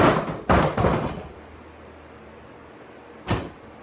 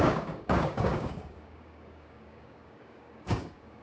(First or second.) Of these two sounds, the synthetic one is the second